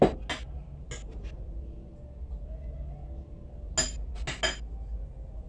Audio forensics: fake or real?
real